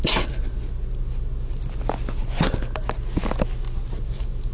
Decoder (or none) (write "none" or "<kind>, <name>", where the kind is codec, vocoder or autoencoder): none